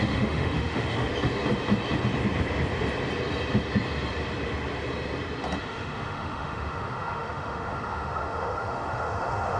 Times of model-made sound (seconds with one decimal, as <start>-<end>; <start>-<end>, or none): 0.0-1.1; 5.6-9.6